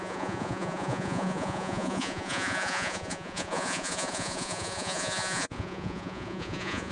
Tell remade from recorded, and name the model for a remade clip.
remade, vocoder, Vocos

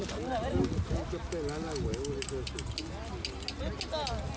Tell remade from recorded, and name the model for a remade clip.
recorded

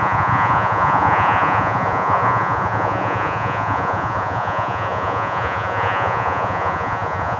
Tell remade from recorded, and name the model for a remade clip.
remade, vocoder, Vocos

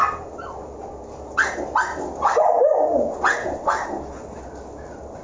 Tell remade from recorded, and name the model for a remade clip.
recorded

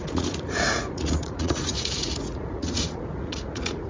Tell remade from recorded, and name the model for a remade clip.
remade, vocoder, Vocos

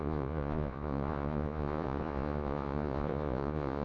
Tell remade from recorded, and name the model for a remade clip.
remade, vocoder, Vocos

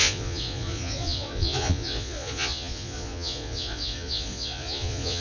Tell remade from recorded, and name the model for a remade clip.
remade, vocoder, Vocos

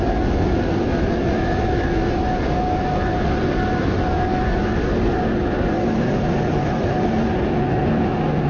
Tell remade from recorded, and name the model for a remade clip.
recorded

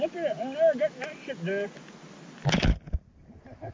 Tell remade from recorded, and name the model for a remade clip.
recorded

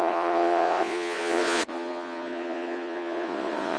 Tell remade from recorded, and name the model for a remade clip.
remade, vocoder, Vocos